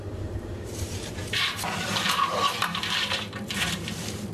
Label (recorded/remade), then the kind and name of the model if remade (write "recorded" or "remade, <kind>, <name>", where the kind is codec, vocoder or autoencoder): remade, vocoder, BigVGAN v2